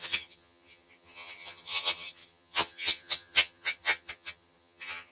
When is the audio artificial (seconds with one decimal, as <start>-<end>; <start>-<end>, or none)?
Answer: 0.0-5.1